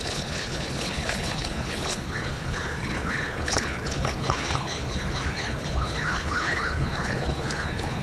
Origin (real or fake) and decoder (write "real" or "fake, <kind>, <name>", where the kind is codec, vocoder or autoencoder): fake, codec, HILCodec